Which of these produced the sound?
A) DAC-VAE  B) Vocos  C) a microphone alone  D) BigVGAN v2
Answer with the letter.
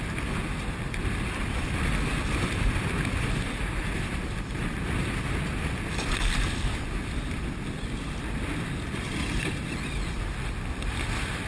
C